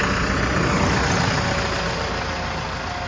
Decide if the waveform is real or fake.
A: real